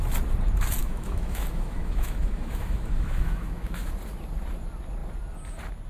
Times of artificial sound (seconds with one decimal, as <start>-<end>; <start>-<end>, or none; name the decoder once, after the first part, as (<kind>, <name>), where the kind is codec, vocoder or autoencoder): 0.8-3.9 (autoencoder, DAC-VAE)